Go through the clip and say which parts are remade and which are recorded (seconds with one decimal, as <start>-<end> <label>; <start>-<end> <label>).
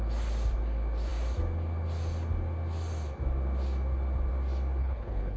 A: 0.0-4.8 recorded; 4.8-5.4 remade